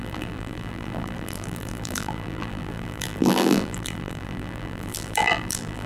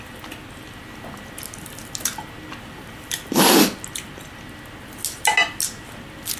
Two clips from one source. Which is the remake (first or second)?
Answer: first